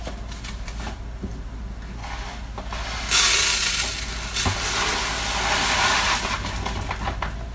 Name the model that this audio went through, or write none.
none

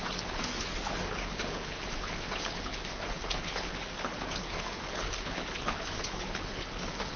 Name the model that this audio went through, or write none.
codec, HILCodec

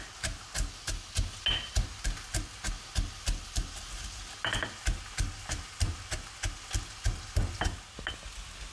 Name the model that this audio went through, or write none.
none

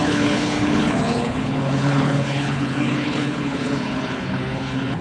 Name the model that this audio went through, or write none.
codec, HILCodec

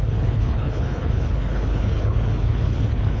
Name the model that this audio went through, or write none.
codec, HILCodec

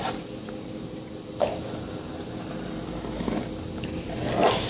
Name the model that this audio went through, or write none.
none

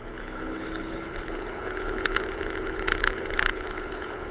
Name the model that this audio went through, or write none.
codec, HILCodec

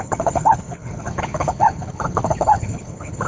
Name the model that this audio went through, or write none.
codec, HILCodec